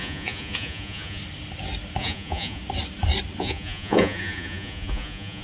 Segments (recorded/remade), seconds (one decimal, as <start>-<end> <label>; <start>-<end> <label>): 0.0-1.2 remade; 1.2-2.0 recorded; 2.0-2.6 remade; 2.6-3.4 recorded; 3.4-5.4 remade